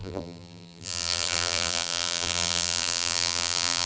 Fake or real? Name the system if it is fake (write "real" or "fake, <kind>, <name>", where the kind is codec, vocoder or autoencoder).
fake, vocoder, BigVGAN v2